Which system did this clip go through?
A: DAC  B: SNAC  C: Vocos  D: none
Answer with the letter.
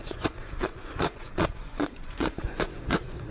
C